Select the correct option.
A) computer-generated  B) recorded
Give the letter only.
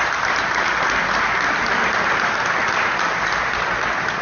B